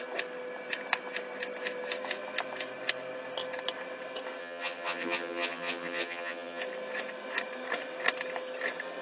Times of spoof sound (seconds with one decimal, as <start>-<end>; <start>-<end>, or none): 4.4-6.6